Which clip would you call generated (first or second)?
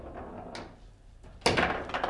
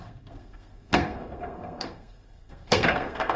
second